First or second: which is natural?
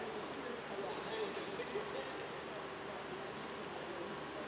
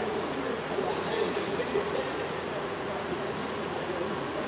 first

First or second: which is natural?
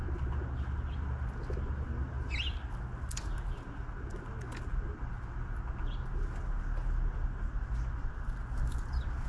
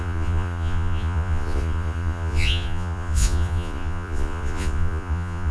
first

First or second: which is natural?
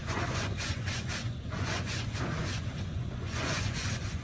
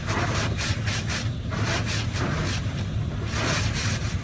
second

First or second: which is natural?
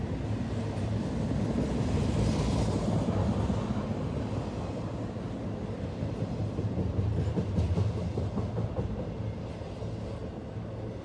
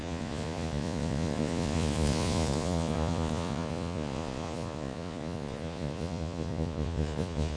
first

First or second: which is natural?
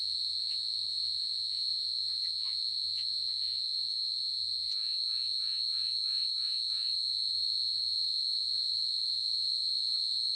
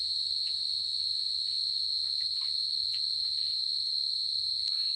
second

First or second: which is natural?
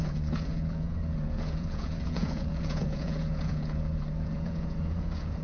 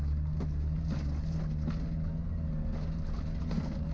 second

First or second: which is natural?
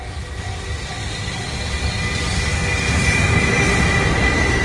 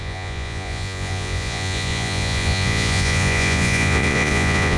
first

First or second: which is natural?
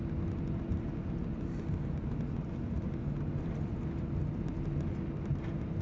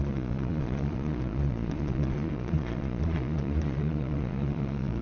first